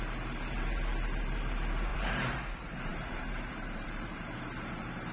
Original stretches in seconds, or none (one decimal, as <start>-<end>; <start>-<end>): none